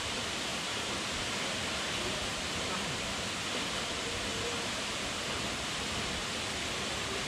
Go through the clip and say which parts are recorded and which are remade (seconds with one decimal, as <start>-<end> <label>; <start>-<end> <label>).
0.0-4.3 remade; 4.3-4.9 recorded; 4.9-6.2 remade; 6.2-7.3 recorded